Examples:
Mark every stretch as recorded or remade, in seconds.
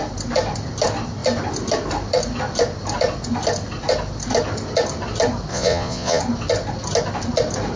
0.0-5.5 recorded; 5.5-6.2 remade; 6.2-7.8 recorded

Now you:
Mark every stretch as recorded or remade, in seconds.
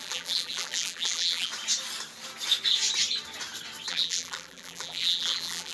0.0-1.5 remade; 1.5-3.9 recorded; 3.9-5.7 remade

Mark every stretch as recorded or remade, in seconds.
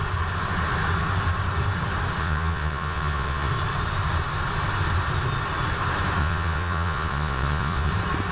0.0-2.2 recorded; 2.2-3.5 remade; 3.5-6.2 recorded; 6.2-7.9 remade; 7.9-8.3 recorded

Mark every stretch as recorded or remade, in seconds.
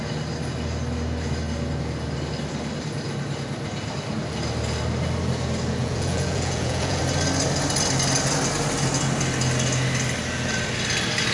0.0-5.8 recorded; 5.8-7.0 remade; 7.0-11.3 recorded